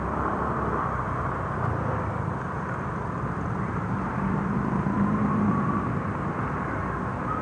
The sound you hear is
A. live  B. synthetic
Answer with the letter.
B